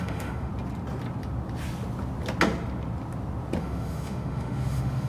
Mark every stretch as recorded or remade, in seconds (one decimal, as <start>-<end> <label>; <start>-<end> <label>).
0.0-0.5 remade; 0.5-3.6 recorded; 3.6-5.1 remade

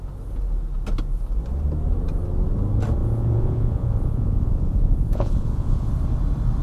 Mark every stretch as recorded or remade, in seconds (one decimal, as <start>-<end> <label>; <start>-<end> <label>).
0.0-3.0 recorded; 3.0-5.9 remade; 5.9-6.6 recorded

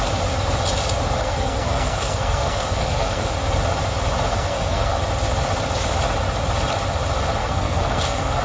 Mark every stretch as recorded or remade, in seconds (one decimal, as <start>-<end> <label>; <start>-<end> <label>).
0.0-1.2 recorded; 1.2-3.3 remade; 3.3-4.3 recorded; 4.3-5.0 remade; 5.0-7.4 recorded; 7.4-8.4 remade

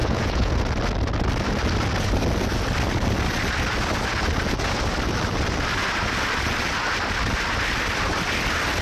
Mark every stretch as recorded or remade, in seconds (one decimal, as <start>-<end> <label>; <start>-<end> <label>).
0.0-0.5 remade; 0.5-8.8 recorded

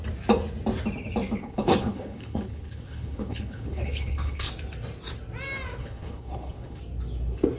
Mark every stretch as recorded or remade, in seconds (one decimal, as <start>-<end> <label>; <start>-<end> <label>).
0.0-1.4 recorded; 1.4-4.5 remade; 4.5-5.8 recorded; 5.8-6.8 remade; 6.8-7.6 recorded

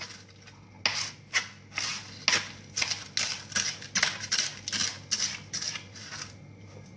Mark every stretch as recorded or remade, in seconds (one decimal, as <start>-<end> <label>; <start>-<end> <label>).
0.0-7.0 recorded

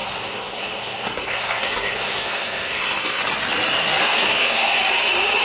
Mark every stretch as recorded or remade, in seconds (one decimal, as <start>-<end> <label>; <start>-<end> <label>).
0.0-3.2 remade; 3.2-4.0 recorded; 4.0-4.8 remade; 4.8-5.4 recorded